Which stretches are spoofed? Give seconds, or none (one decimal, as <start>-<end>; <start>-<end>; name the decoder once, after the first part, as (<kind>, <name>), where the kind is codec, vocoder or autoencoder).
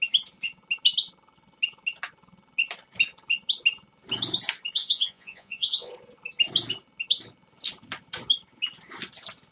4.8-5.9 (vocoder, Vocos)